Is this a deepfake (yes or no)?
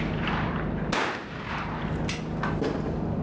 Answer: no